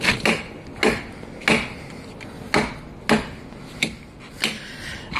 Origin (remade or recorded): recorded